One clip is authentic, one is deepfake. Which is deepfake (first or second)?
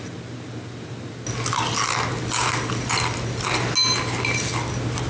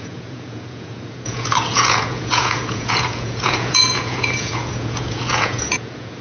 second